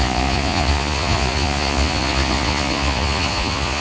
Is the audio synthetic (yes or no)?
yes